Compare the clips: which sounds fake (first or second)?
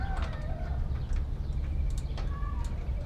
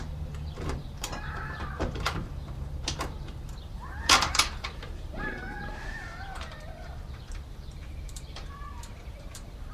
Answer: second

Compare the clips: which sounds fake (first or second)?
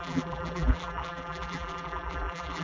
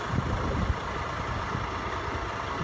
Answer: first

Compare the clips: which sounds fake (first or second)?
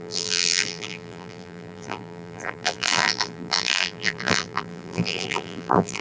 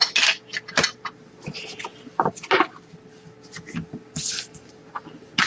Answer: first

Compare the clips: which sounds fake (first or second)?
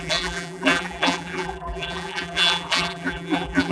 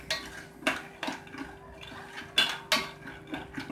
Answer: first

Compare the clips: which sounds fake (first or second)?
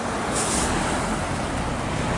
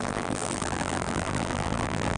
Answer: second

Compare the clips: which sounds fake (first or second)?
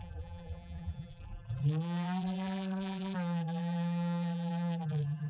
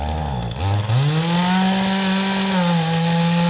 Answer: first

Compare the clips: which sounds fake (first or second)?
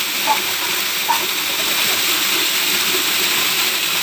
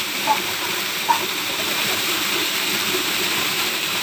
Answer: second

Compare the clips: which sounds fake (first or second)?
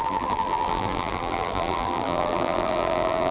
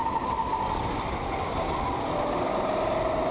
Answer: first